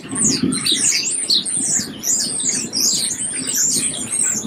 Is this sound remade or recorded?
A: recorded